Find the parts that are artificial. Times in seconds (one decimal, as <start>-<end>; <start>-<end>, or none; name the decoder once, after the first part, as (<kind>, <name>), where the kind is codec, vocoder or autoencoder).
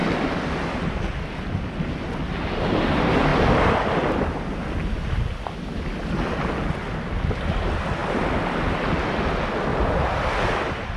8.0-9.1 (vocoder, BigVGAN v2); 9.7-11.0